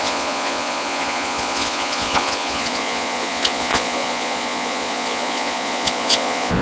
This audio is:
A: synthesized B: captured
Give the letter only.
A